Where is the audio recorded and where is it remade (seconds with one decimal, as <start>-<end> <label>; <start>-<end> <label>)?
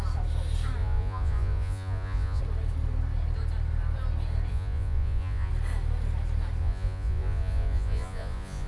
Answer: 0.0-0.8 recorded; 0.8-2.4 remade; 2.4-4.5 recorded; 4.5-5.5 remade; 5.5-6.6 recorded; 6.6-8.7 remade